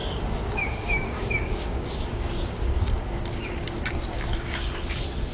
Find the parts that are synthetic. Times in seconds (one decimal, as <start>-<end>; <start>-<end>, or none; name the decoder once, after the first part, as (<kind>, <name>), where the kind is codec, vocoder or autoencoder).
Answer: 0.0-3.2 (codec, DAC); 4.1-4.7